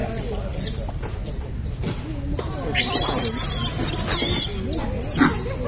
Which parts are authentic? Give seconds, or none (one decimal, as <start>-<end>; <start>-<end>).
0.0-5.7